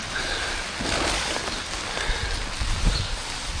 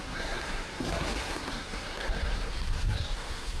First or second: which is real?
first